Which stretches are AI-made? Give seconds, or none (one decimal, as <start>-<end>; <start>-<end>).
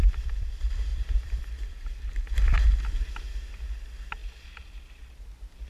0.9-2.1